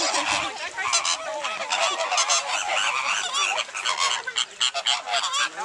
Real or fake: real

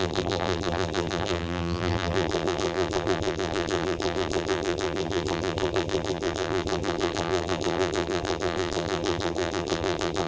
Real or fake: fake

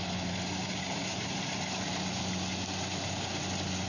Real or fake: real